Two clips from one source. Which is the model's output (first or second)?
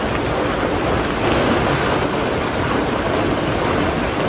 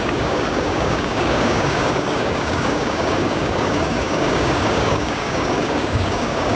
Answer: second